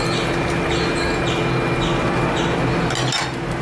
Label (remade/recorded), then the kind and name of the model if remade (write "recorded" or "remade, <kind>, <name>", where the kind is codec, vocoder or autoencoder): recorded